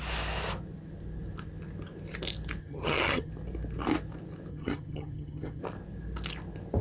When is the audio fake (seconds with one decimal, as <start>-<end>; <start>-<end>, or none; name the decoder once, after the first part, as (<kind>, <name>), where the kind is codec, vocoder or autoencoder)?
2.6-3.3 (vocoder, HiFi-GAN); 4.5-5.6

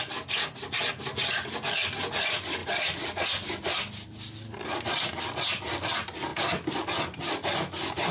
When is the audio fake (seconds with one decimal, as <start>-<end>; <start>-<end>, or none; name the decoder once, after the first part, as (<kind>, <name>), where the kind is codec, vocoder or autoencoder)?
none

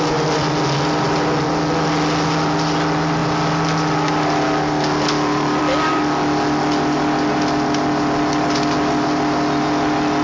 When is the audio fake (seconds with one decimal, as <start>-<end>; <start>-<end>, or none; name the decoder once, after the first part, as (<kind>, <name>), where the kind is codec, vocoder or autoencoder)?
none

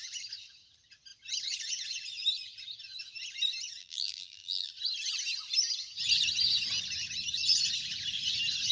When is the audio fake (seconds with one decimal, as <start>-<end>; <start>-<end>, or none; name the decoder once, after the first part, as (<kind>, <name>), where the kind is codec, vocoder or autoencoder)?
3.8-4.7 (vocoder, BigVGAN v2)

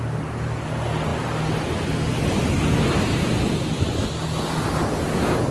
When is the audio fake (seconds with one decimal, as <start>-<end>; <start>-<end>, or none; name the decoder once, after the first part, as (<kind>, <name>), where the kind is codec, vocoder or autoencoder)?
none